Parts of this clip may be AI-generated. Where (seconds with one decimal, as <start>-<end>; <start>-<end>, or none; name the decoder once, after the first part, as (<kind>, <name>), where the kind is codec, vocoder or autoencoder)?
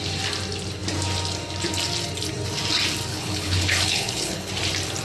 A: 3.1-4.5 (codec, HILCodec)